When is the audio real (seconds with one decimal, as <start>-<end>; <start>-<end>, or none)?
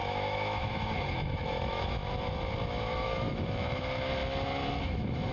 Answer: 2.0-2.7; 4.2-4.8